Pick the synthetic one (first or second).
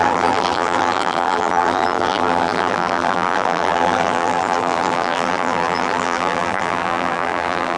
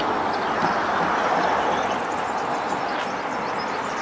first